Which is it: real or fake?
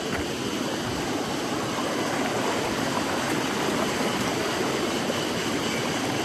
real